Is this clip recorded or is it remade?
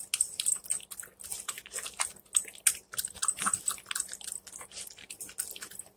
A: recorded